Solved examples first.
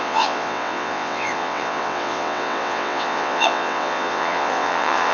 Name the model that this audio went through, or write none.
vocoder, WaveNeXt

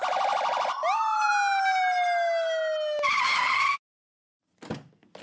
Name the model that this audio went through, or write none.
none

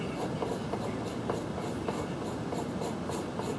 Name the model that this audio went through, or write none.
none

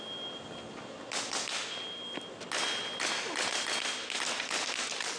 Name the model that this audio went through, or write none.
none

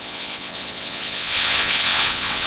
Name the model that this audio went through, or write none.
vocoder, WaveNeXt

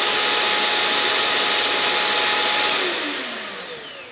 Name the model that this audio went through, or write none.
none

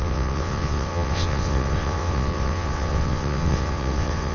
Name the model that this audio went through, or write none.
vocoder, WaveNeXt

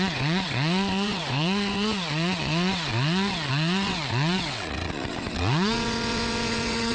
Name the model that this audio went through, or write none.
vocoder, WaveNeXt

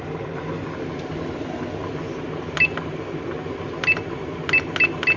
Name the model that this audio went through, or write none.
none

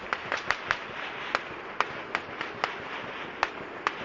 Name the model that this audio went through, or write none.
none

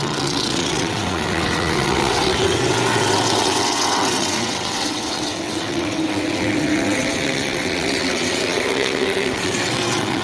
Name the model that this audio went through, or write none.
vocoder, WaveNeXt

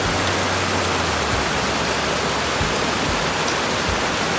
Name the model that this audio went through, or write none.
none